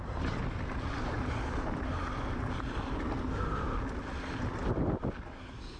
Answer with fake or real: real